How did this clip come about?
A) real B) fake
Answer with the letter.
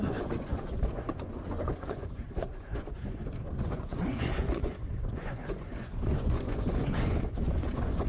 B